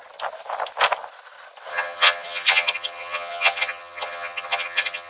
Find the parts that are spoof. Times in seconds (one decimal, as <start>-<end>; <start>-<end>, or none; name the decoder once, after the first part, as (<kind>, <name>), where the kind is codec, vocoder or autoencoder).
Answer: 1.7-5.1 (vocoder, HiFi-GAN)